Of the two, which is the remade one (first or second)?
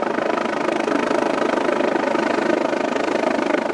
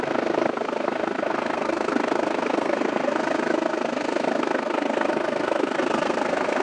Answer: second